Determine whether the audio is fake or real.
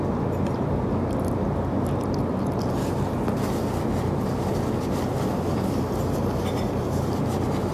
real